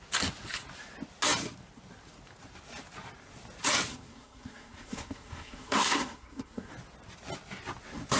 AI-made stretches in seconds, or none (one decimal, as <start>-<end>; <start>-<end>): 3.9-6.7